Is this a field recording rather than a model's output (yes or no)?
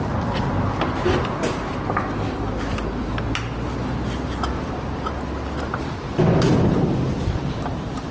yes